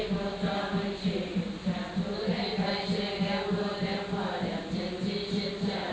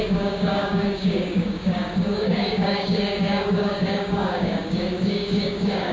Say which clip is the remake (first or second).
second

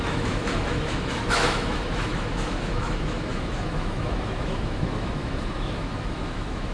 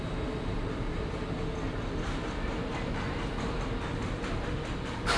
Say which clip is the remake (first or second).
first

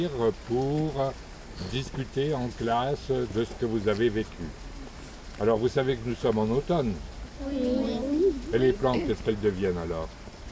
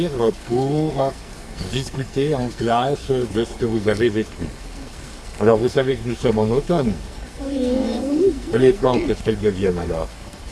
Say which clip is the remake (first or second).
second